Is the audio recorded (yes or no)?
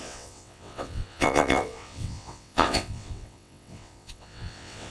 no